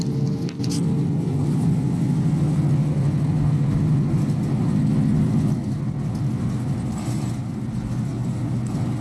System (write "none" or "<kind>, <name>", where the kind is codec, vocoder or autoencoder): none